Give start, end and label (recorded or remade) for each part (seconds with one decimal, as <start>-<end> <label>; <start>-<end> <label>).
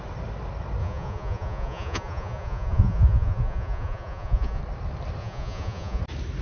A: 0.0-0.8 recorded; 0.8-4.6 remade; 4.6-5.2 recorded; 5.2-6.0 remade; 6.0-6.4 recorded